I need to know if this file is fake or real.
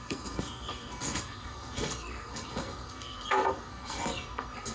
fake